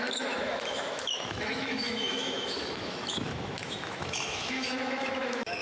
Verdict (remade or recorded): remade